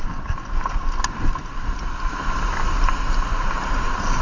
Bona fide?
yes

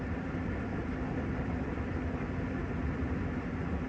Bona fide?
no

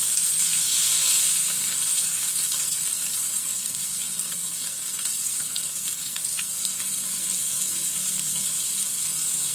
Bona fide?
no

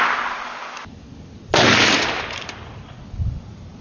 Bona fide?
yes